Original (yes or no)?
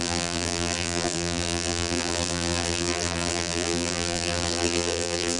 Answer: no